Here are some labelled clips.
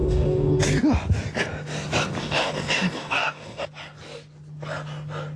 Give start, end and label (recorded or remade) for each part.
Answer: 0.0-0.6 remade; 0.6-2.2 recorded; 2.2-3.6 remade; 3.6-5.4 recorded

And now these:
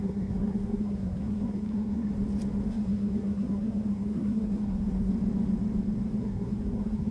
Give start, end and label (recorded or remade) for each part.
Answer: 0.0-2.1 remade; 2.1-2.7 recorded; 2.7-5.1 remade; 5.1-6.2 recorded; 6.2-7.1 remade

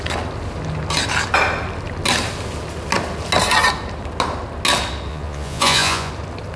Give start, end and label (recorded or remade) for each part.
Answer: 0.0-5.1 recorded; 5.1-6.1 remade; 6.1-6.6 recorded